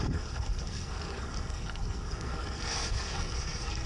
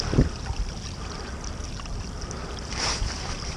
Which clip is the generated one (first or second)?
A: first